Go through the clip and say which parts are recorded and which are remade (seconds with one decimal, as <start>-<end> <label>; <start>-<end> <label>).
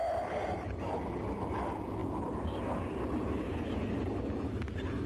0.0-5.1 recorded